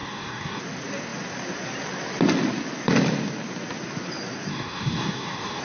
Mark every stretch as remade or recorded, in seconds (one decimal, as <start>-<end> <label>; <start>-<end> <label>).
0.0-0.6 remade; 0.6-4.5 recorded; 4.5-5.6 remade